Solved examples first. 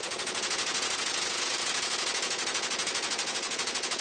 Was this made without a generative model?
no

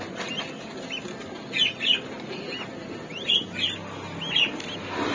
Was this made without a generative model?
yes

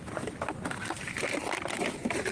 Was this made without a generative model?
yes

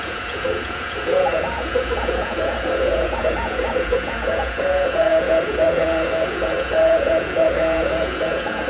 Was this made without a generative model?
no